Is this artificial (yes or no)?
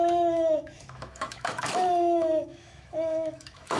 yes